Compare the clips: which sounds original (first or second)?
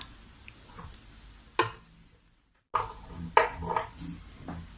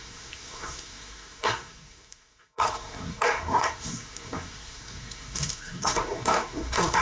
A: first